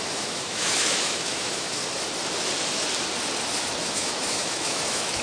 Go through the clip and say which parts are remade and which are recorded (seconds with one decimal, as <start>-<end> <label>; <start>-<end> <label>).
0.0-1.8 remade; 1.8-3.8 recorded; 3.8-5.2 remade